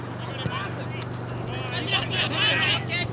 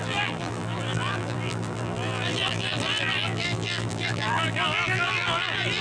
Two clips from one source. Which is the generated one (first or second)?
second